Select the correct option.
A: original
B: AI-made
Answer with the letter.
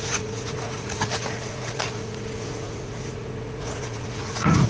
B